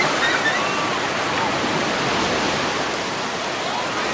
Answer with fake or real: real